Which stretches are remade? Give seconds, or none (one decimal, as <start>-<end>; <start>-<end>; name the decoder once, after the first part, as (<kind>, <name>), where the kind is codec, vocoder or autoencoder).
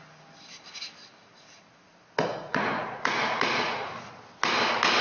2.3-3.9 (vocoder, Vocos)